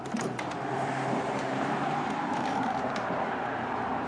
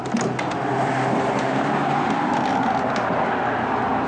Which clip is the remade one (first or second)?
first